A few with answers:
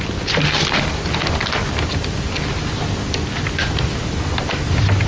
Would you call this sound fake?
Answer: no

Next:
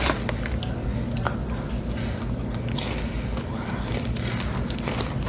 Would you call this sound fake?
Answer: no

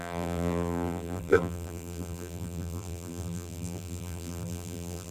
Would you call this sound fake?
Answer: yes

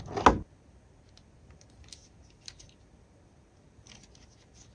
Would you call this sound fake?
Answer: no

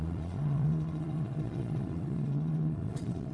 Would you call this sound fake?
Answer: yes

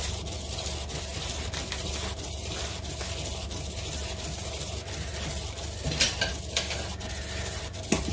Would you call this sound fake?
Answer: no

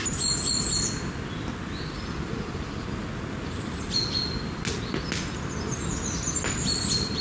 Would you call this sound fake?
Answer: no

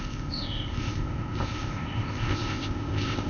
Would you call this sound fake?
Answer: yes